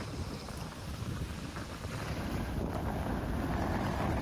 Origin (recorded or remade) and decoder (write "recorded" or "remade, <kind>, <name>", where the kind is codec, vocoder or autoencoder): recorded